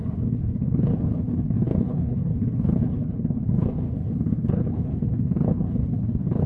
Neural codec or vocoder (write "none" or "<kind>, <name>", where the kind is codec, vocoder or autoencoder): codec, HILCodec